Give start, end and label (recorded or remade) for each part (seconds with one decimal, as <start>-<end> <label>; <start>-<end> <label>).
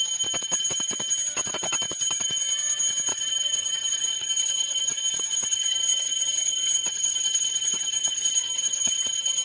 0.0-3.1 recorded; 3.1-5.0 remade; 5.0-5.5 recorded; 5.5-9.4 remade